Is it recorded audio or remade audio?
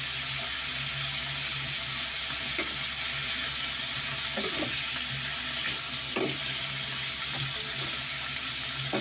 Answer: recorded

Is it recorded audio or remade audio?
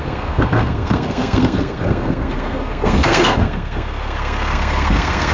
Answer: remade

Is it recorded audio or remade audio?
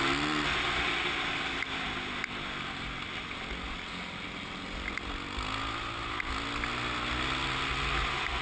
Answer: recorded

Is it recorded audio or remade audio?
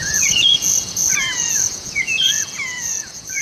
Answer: remade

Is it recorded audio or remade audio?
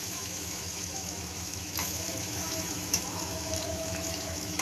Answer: remade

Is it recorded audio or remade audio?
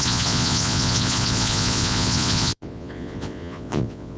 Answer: remade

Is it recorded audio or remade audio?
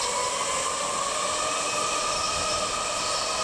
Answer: recorded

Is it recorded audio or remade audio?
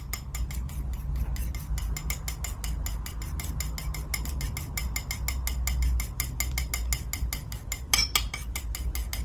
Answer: recorded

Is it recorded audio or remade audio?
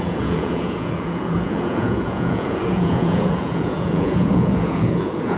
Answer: remade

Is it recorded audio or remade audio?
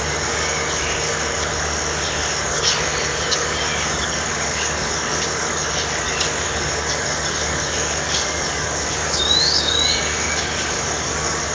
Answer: remade